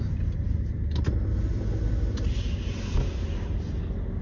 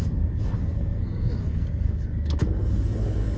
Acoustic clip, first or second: first